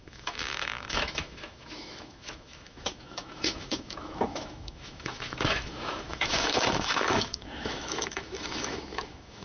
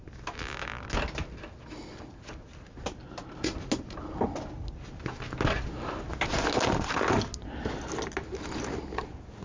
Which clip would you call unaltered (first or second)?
second